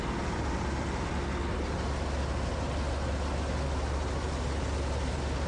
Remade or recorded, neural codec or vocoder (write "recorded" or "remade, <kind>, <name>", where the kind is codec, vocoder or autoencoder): recorded